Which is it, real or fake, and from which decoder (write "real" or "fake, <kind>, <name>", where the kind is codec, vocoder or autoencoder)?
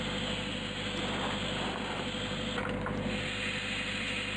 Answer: real